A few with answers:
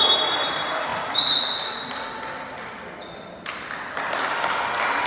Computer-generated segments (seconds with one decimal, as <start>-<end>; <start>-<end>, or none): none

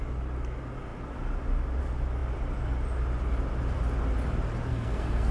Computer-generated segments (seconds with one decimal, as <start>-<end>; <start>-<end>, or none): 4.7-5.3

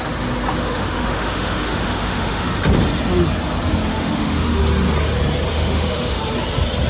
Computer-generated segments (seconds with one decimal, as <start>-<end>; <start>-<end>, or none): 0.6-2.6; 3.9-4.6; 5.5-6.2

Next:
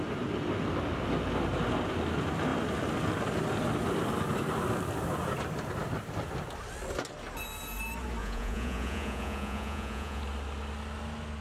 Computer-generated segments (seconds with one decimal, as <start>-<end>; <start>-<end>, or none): 8.2-10.2